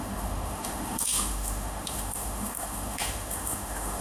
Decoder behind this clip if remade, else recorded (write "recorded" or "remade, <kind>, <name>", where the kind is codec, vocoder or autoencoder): remade, autoencoder, DAC-VAE